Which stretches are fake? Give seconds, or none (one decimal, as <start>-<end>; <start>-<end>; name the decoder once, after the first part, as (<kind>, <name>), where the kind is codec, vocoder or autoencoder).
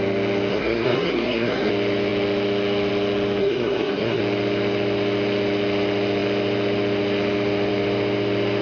0.5-1.7 (codec, SNAC); 3.4-4.2